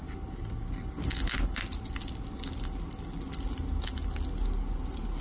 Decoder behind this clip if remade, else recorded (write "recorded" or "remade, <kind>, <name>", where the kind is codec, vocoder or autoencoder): recorded